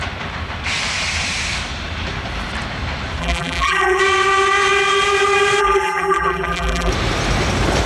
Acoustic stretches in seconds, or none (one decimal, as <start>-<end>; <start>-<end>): 0.0-3.2; 4.0-5.6; 6.9-7.9